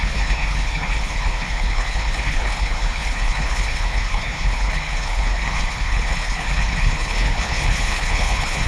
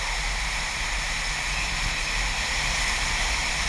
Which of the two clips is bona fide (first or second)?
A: second